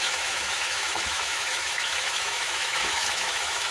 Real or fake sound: fake